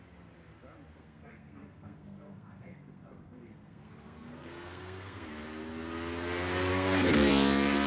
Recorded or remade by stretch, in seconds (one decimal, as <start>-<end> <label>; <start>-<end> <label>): 0.0-0.9 recorded; 0.9-5.3 remade; 5.3-6.7 recorded; 6.7-7.3 remade; 7.3-7.9 recorded